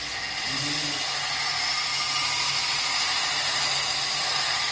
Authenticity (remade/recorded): recorded